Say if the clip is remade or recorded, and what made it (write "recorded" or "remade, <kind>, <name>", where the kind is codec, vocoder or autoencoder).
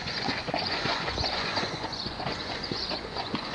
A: remade, vocoder, Vocos